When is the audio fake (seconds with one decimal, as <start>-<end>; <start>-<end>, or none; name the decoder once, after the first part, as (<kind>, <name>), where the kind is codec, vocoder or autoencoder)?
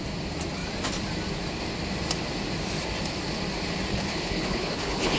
3.9-5.2 (codec, HILCodec)